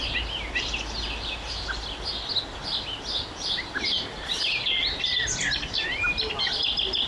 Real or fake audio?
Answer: real